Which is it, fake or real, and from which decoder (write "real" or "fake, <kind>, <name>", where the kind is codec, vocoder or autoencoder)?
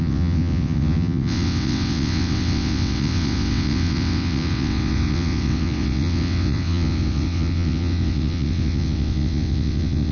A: fake, vocoder, WaveNeXt